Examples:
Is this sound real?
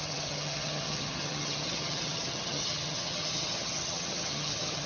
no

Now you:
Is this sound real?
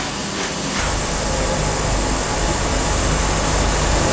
yes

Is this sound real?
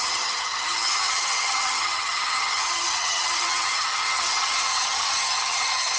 no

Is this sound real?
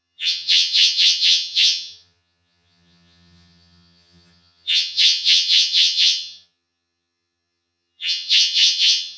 no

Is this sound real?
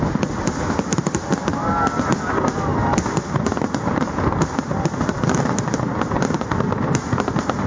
yes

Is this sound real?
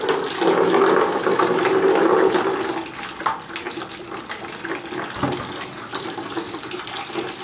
yes